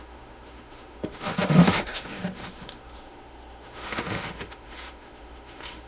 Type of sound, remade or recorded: remade